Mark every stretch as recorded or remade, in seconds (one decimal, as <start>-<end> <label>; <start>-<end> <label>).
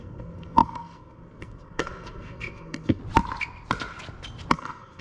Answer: 0.0-3.0 remade; 3.0-4.5 recorded; 4.5-5.0 remade